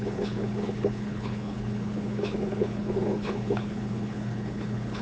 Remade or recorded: remade